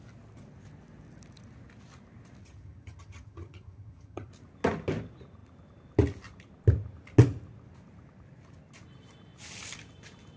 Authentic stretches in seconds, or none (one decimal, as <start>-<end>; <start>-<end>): 0.0-2.4; 4.3-10.4